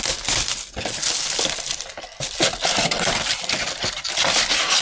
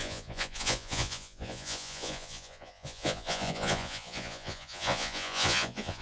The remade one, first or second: second